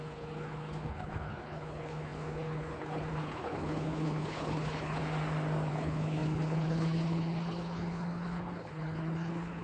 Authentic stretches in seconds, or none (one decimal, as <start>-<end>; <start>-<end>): 5.0-5.7